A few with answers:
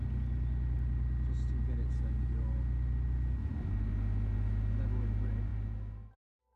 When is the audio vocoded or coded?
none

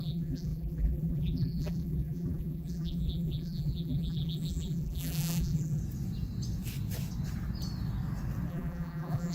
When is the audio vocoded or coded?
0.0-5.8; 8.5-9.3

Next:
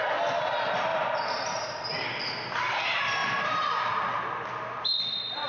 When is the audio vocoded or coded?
0.9-1.8; 3.2-3.9

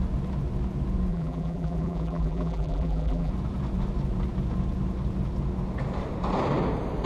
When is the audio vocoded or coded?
1.1-3.3

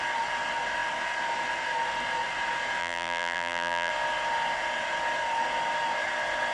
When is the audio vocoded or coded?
2.8-3.9

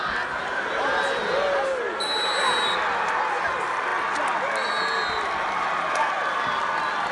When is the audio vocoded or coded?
none